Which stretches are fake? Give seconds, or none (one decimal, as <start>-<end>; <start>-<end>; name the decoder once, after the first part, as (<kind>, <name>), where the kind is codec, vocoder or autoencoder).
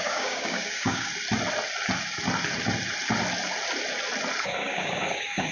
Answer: 0.0-1.1 (codec, DAC); 4.4-5.5